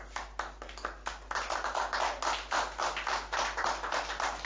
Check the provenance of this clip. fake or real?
real